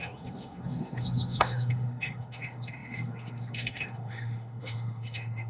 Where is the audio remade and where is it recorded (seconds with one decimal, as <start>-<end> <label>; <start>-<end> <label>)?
0.0-5.5 remade